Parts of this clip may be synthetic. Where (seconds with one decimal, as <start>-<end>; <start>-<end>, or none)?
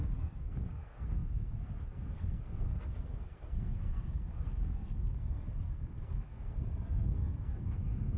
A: 0.0-8.2